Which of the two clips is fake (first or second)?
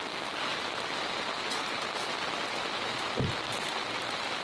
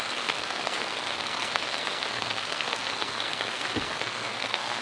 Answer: second